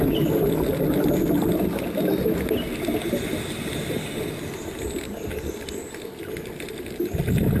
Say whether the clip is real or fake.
real